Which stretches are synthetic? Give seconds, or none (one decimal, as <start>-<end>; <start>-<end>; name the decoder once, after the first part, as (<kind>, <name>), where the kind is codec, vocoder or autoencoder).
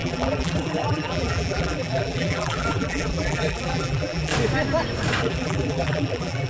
0.0-4.3 (vocoder, BigVGAN v2); 5.2-6.5